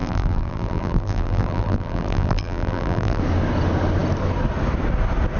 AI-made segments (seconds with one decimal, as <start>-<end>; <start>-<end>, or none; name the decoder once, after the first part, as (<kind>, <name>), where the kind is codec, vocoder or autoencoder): 0.0-3.2 (vocoder, BigVGAN v2)